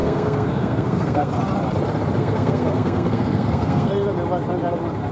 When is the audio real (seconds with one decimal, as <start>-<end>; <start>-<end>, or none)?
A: 1.3-2.2; 3.9-5.1